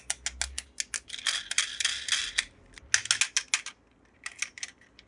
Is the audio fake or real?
real